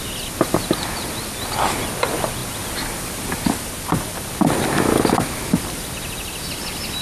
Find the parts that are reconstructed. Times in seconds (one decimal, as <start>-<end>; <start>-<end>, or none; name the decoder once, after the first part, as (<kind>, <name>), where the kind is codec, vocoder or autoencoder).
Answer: none